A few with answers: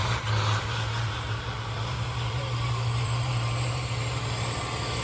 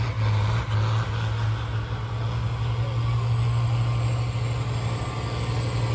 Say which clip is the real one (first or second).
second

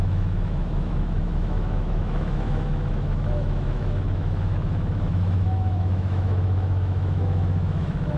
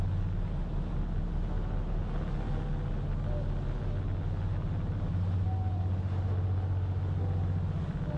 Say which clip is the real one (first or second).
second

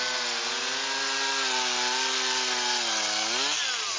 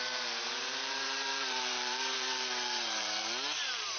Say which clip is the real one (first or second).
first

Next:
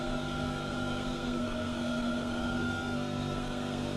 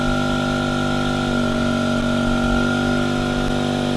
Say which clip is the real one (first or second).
second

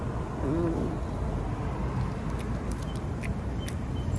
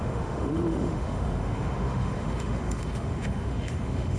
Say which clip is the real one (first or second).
first